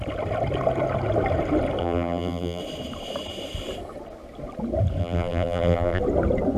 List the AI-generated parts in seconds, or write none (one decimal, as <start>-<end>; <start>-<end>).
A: 1.8-2.6; 5.0-6.0